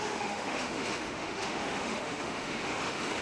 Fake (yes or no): yes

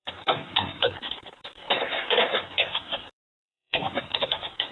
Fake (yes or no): yes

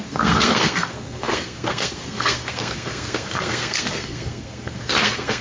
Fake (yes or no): yes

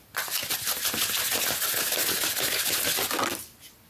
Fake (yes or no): no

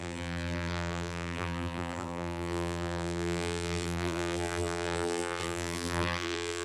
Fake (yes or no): yes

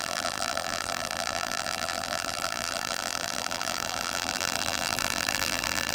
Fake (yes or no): yes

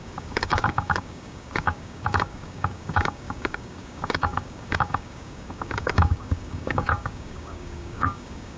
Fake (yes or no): yes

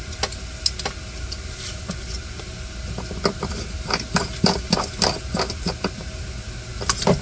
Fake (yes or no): no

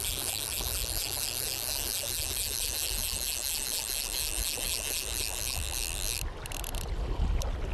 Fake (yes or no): no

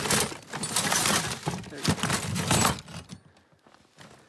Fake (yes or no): no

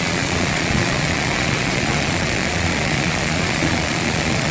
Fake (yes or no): yes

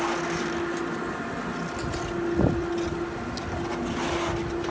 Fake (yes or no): no